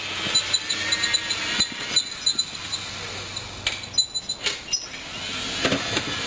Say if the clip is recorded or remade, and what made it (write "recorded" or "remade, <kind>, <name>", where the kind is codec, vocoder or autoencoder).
recorded